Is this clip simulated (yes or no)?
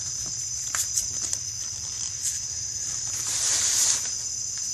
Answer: yes